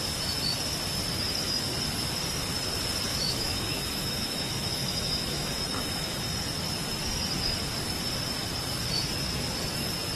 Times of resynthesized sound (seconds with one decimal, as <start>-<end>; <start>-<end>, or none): 3.1-6.2